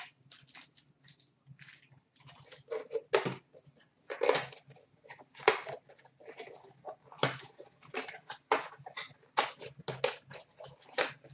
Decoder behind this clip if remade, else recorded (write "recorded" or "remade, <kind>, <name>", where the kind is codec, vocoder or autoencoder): recorded